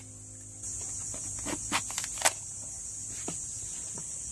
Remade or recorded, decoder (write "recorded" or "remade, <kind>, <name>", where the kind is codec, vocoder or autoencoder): recorded